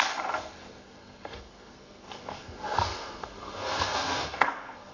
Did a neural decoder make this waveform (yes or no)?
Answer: yes